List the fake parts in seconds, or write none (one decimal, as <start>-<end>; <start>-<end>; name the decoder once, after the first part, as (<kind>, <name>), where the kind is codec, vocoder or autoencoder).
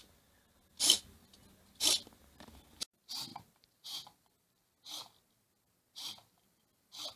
none